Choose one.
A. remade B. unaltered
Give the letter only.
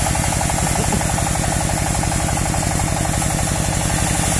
B